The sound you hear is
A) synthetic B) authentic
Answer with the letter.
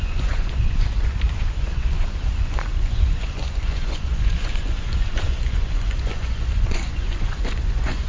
A